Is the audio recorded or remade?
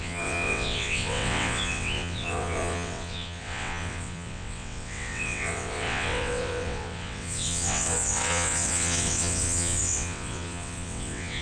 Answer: remade